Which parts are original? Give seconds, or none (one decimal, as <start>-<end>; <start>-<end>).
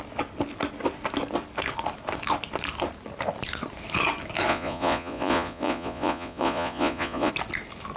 0.0-4.5; 7.3-8.0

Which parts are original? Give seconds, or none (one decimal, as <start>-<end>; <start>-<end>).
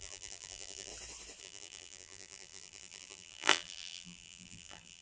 0.9-1.4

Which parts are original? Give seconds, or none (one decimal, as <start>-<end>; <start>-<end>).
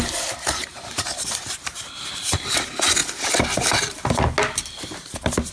3.0-5.5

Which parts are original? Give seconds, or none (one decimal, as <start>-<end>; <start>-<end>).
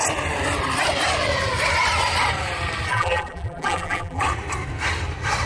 0.0-2.9; 4.2-5.5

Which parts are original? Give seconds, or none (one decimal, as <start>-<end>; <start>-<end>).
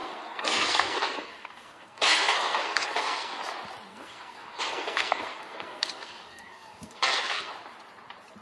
3.4-3.9; 7.5-8.4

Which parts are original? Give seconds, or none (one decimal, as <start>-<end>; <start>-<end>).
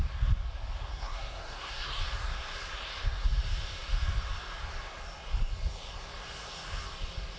0.0-0.9; 2.0-7.4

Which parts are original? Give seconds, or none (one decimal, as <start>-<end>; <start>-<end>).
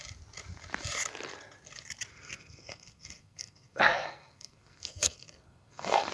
0.0-2.1